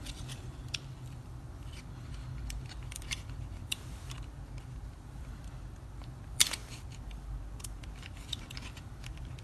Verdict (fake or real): fake